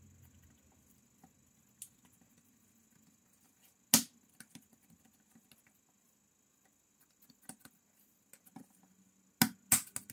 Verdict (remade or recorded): recorded